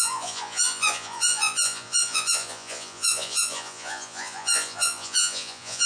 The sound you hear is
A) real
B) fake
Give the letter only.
B